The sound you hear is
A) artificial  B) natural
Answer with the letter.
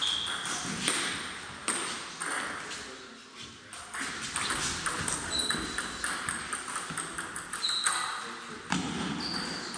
B